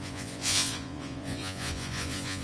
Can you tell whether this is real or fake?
fake